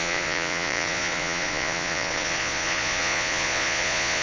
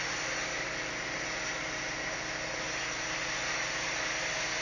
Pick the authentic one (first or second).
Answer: second